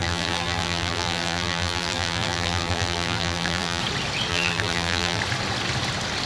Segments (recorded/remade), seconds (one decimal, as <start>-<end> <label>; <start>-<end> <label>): 0.0-3.8 remade; 3.8-4.3 recorded; 4.3-5.2 remade; 5.2-6.3 recorded